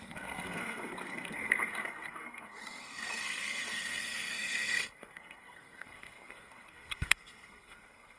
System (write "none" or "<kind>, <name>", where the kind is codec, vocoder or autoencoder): codec, SNAC